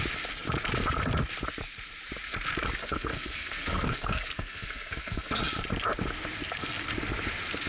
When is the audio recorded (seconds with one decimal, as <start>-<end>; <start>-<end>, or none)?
0.0-2.8; 5.4-7.7